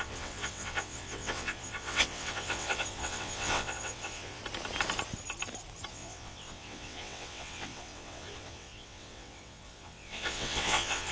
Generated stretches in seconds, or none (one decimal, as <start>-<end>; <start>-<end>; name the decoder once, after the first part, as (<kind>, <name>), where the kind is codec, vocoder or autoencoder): 0.0-4.4 (vocoder, WaveNeXt); 5.9-11.1